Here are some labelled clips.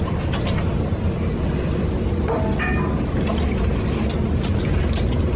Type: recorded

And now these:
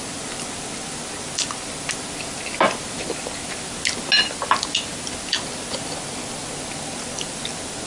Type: recorded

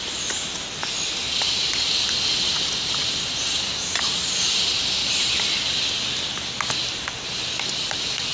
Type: recorded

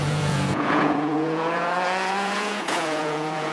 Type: remade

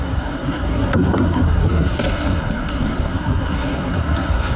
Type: remade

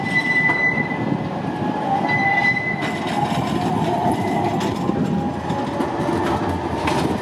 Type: recorded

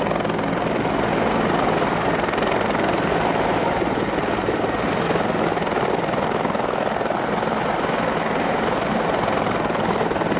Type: recorded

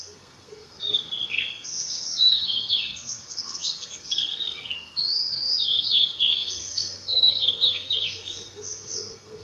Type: remade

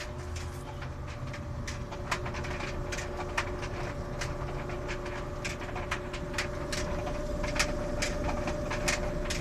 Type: recorded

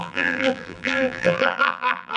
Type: remade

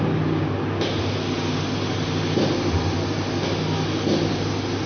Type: recorded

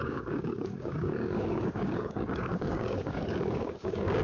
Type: remade